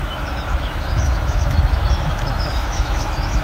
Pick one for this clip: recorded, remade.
remade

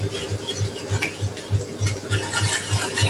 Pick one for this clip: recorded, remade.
recorded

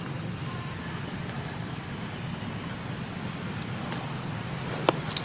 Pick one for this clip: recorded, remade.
recorded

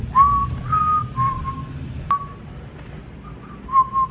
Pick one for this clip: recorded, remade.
recorded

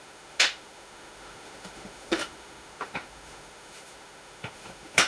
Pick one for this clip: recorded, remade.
remade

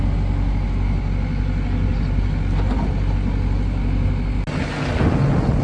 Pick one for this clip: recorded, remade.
recorded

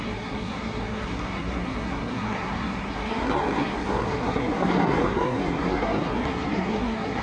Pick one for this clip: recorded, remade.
remade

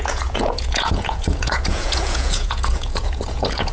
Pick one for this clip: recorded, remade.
remade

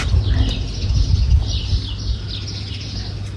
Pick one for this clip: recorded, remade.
recorded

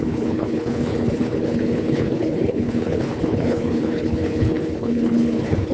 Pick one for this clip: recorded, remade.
remade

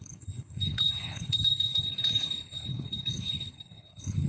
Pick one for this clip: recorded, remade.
remade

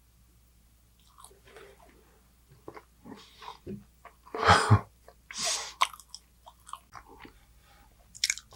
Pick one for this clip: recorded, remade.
recorded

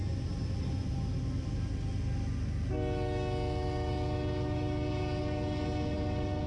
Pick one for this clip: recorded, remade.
recorded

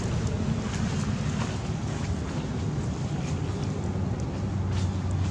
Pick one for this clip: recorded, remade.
recorded